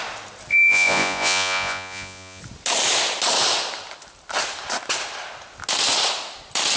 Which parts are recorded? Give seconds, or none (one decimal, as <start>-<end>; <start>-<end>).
0.0-0.5; 2.4-6.8